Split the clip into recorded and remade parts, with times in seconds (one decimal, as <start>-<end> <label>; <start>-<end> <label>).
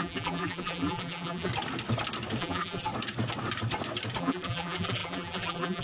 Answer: 0.0-1.5 remade; 1.5-2.4 recorded; 2.4-2.9 remade; 2.9-4.2 recorded; 4.2-5.8 remade